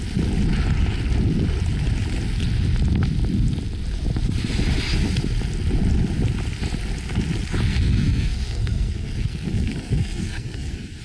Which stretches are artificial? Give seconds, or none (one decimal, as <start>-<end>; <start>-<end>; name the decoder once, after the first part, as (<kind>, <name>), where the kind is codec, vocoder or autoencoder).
7.7-11.0 (codec, SNAC)

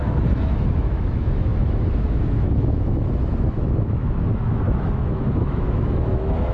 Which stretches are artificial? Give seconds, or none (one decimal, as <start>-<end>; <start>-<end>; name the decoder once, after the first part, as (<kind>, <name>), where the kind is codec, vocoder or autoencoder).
0.0-6.5 (autoencoder, DAC-VAE)

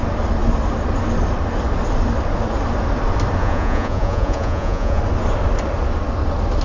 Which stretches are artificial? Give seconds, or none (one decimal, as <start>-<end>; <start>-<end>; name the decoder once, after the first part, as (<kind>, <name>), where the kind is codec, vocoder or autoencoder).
3.4-5.0 (vocoder, Vocos)